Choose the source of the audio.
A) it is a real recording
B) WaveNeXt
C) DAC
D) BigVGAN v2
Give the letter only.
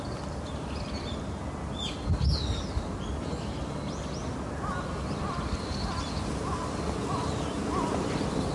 A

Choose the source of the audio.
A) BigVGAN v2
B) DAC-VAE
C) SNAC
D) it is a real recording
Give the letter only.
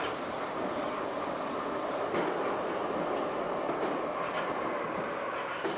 D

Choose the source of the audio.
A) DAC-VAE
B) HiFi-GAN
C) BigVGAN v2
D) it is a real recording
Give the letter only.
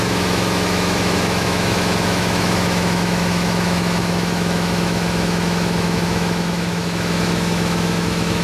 A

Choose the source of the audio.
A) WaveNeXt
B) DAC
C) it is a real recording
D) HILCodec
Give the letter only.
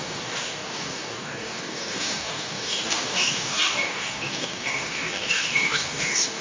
B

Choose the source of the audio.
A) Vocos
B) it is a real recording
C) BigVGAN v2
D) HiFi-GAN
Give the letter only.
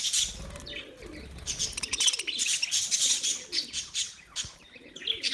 B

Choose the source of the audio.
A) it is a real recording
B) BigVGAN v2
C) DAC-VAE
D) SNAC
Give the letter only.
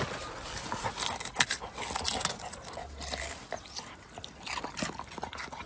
A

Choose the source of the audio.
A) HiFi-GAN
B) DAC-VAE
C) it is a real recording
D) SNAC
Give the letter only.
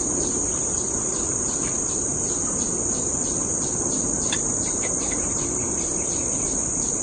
C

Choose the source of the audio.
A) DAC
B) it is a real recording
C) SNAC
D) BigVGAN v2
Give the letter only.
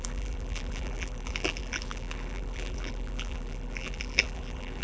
D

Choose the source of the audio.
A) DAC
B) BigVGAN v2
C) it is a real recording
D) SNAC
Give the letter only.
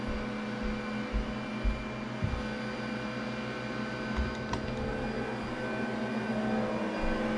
C